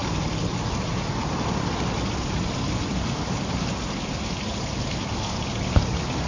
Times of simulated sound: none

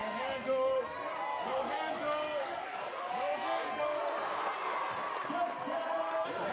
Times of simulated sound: 0.0-0.9 (codec, DAC); 1.3-4.0

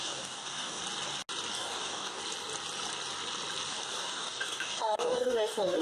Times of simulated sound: 0.0-0.8 (codec, DAC); 1.5-2.2; 3.7-5.8

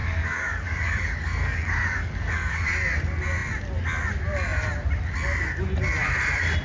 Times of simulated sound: 0.0-2.6 (codec, DAC)

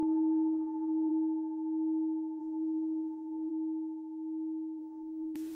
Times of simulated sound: 0.0-1.1 (codec, DAC); 2.4-3.5; 4.8-5.5